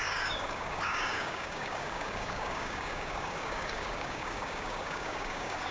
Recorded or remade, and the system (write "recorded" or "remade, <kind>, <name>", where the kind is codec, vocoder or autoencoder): remade, codec, DAC